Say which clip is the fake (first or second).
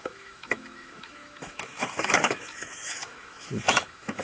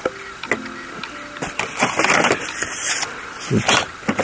first